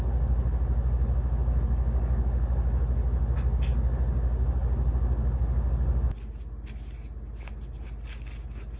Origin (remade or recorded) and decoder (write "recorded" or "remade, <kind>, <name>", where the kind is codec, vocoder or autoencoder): recorded